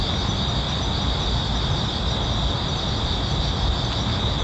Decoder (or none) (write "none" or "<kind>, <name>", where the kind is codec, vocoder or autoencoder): none